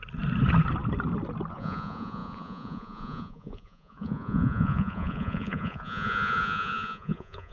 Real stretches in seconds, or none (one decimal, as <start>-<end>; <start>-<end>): 0.0-1.5